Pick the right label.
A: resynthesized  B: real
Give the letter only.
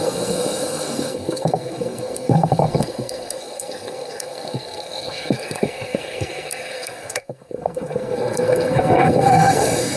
A